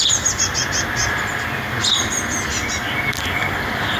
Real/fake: real